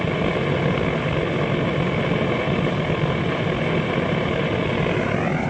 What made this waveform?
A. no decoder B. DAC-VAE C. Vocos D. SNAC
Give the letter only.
A